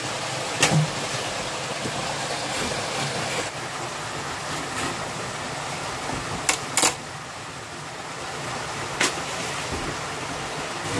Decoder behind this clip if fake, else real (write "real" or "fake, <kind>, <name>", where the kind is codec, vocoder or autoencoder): real